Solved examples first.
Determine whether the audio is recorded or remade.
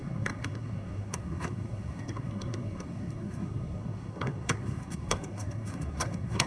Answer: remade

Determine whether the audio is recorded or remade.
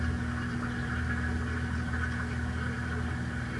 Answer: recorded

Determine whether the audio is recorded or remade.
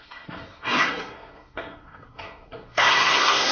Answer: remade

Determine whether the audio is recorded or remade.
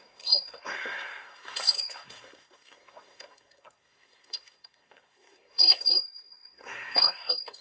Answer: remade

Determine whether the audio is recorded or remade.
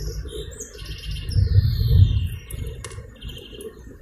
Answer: recorded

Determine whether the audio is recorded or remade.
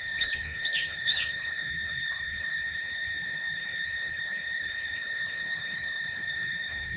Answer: remade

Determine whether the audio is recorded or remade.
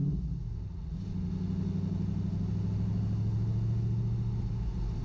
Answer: recorded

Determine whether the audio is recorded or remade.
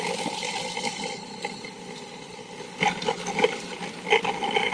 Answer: recorded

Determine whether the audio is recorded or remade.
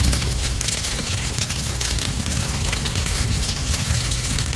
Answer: remade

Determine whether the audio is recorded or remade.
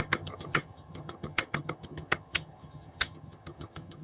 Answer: remade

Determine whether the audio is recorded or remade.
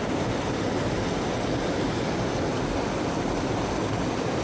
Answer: recorded